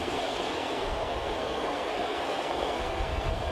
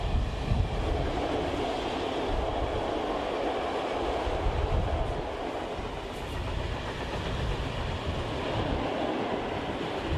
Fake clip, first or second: first